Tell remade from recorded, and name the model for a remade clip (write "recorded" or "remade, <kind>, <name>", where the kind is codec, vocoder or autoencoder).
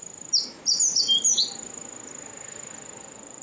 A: recorded